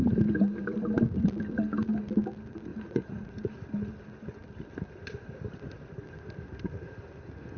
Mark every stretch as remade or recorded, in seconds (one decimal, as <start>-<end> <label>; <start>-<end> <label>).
0.0-2.7 recorded; 2.7-3.3 remade; 3.3-7.6 recorded